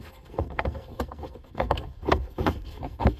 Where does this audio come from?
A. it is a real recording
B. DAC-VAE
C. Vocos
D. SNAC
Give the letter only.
D